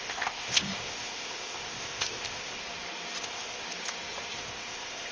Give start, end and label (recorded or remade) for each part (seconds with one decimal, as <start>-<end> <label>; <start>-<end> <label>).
0.0-2.6 remade; 2.6-3.2 recorded; 3.2-3.6 remade; 3.6-4.4 recorded; 4.4-5.1 remade

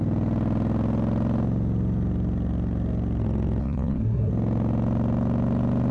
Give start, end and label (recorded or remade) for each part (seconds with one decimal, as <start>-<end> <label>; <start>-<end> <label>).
0.0-3.6 recorded; 3.6-4.3 remade; 4.3-5.9 recorded

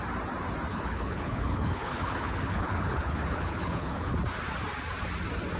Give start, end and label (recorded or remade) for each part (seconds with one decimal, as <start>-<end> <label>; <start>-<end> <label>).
0.0-0.7 recorded; 0.7-4.1 remade; 4.1-5.6 recorded

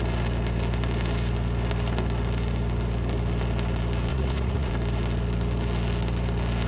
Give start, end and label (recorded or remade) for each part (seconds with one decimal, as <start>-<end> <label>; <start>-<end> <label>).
0.0-4.1 recorded; 4.1-4.7 remade; 4.7-6.7 recorded

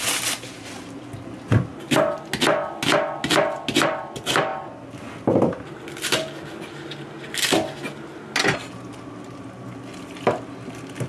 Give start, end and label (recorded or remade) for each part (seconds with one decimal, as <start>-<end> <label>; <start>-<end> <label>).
0.0-11.1 recorded

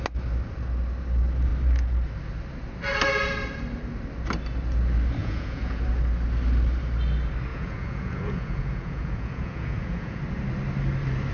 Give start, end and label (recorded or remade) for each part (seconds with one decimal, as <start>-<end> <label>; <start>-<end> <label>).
0.0-5.2 recorded; 5.2-5.8 remade; 5.8-7.5 recorded; 7.5-10.2 remade; 10.2-11.3 recorded

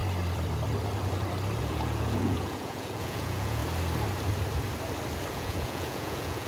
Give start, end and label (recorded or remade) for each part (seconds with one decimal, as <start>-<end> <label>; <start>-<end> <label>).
0.0-1.6 recorded; 1.6-3.6 remade; 3.6-5.3 recorded; 5.3-6.5 remade